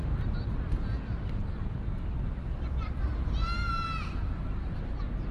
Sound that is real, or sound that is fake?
real